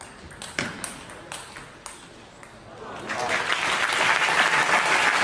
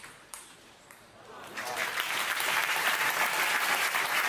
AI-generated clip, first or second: second